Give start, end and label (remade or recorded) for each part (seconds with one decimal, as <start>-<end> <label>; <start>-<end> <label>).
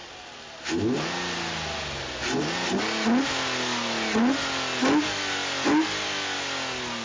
0.0-7.0 recorded